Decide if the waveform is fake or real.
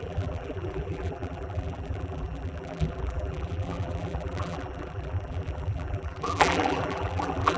fake